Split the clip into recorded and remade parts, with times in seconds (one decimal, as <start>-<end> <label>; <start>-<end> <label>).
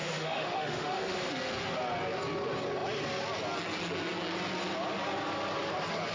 0.0-1.3 remade; 1.3-6.1 recorded